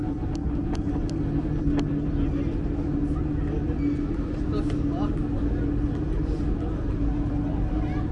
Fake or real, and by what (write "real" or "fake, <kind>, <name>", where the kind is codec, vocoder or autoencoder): real